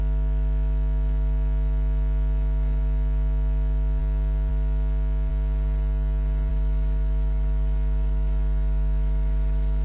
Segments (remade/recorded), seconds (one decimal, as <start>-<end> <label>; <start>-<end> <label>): 0.0-4.0 remade; 4.0-4.5 recorded; 4.5-5.3 remade; 5.3-6.5 recorded; 6.5-9.8 remade